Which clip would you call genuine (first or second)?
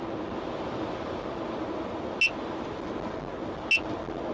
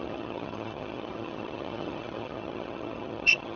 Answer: first